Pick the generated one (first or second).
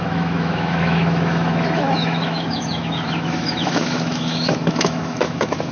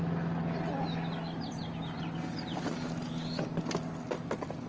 first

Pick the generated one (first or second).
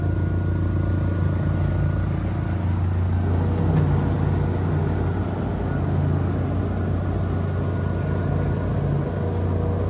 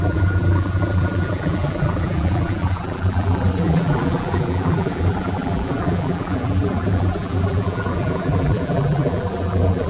second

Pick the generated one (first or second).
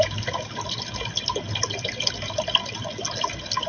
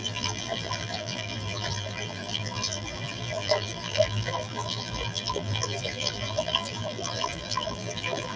second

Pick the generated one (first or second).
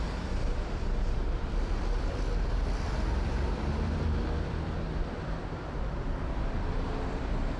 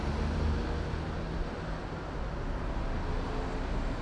first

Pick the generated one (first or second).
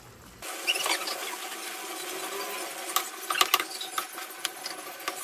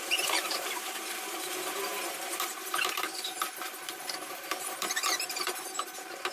second